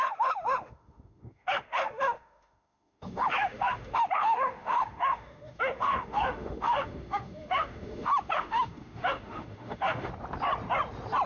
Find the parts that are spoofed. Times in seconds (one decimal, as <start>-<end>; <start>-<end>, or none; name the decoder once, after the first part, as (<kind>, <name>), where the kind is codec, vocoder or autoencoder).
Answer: 0.0-10.1 (autoencoder, DAC-VAE)